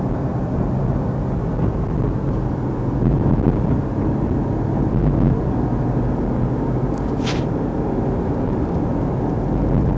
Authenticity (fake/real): real